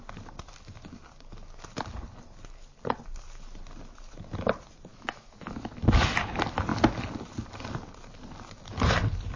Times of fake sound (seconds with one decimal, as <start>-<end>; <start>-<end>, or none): 4.9-5.7